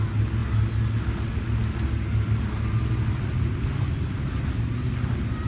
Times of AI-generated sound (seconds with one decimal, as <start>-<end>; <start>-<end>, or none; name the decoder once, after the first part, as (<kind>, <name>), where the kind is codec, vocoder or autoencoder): none